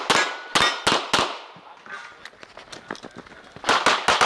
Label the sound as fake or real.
real